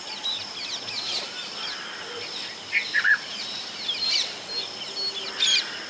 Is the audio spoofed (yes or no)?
no